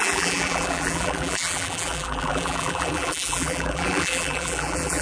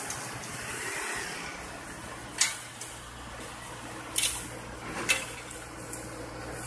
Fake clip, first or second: first